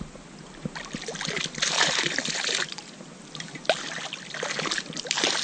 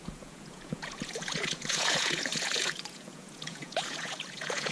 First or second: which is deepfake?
second